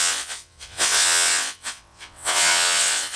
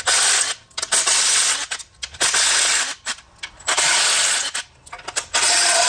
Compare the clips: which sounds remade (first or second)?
first